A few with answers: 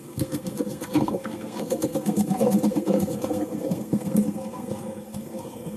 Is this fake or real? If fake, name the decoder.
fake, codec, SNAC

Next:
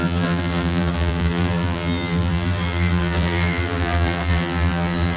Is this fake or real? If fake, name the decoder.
fake, vocoder, BigVGAN v2